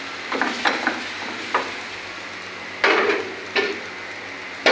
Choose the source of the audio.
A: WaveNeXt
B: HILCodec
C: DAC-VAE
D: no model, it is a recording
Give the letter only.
D